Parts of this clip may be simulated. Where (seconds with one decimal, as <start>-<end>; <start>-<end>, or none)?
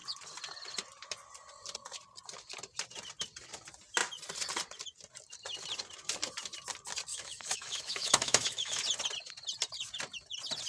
7.1-8.8